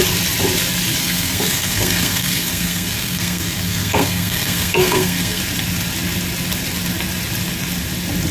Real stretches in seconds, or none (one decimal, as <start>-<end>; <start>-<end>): 0.0-1.0; 5.4-8.3

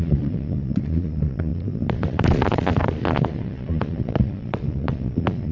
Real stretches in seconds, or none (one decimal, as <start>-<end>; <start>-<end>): none

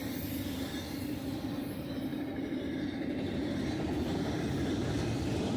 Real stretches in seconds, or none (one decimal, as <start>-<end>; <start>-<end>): 0.0-2.1

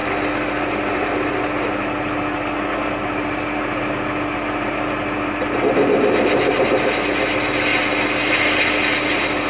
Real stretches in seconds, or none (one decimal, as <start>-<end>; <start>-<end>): 0.0-9.5

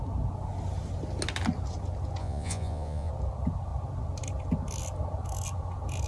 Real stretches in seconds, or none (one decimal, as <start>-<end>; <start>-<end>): 0.0-2.2; 3.1-6.1

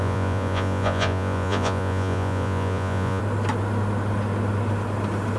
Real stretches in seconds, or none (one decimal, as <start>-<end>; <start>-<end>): 3.2-5.4